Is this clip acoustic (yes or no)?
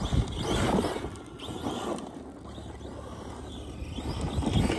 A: yes